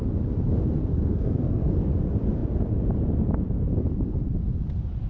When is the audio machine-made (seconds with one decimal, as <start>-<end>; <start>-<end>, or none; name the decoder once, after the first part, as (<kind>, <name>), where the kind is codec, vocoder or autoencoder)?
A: 0.9-1.9 (codec, SNAC)